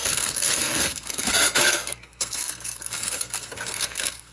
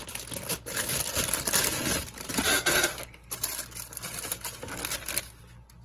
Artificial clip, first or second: first